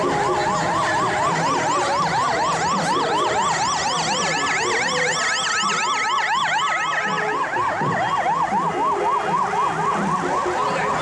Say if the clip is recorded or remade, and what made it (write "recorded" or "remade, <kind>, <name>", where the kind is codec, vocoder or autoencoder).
recorded